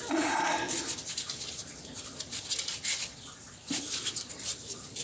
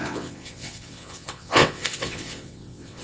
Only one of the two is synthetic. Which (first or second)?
second